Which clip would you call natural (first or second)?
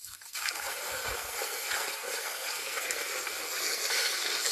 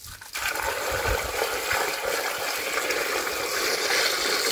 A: second